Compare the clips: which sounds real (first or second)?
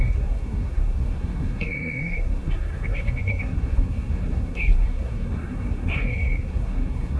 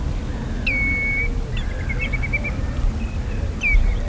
second